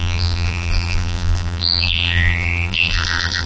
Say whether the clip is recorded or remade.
remade